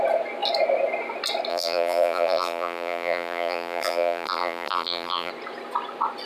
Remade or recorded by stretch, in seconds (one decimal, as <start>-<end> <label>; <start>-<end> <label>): 0.0-1.5 recorded; 1.5-5.3 remade; 5.3-6.3 recorded